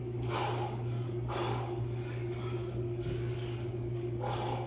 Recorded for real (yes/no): no